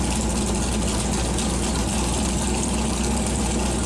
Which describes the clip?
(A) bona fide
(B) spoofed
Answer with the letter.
A